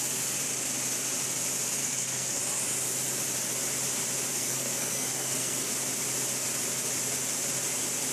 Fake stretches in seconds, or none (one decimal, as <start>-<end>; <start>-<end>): 1.8-2.4; 4.3-5.7